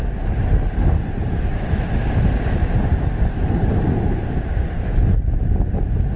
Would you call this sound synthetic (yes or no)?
no